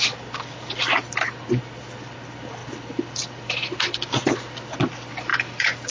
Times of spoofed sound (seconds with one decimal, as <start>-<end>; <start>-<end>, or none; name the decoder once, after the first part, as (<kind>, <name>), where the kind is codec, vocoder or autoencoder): 2.6-4.4 (vocoder, BigVGAN v2)